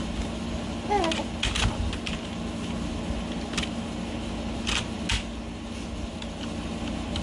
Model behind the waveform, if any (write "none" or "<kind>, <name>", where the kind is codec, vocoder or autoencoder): none